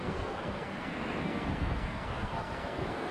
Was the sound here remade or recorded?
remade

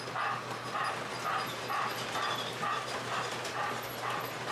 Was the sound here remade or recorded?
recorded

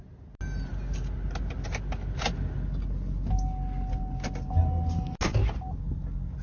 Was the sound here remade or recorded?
recorded